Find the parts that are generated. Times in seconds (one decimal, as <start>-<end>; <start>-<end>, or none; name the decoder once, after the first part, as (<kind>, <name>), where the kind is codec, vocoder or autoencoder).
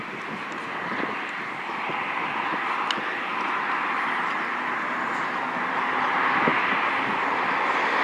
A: none